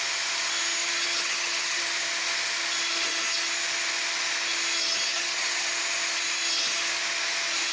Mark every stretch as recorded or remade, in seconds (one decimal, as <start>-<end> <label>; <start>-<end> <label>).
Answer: 0.0-0.8 recorded; 0.8-1.8 remade; 1.8-5.1 recorded; 5.1-5.7 remade; 5.7-7.7 recorded